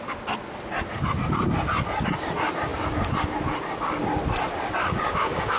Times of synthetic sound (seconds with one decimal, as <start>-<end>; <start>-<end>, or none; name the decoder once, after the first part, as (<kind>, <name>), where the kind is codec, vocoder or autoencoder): 4.8-5.6 (codec, DAC)

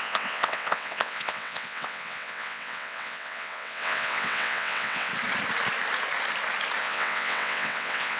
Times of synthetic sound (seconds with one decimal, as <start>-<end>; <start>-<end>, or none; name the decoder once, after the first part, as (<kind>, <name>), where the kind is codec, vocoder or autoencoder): 0.0-5.1 (vocoder, WaveNeXt); 6.8-8.2